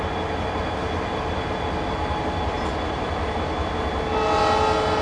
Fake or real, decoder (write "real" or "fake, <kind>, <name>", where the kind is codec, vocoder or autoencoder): real